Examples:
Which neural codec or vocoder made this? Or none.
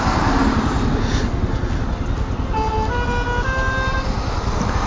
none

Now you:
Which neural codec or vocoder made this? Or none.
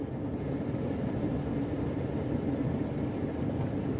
none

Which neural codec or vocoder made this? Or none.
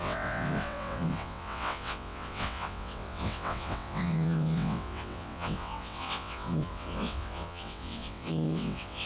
vocoder, WaveNeXt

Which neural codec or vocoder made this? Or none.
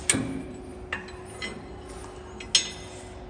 none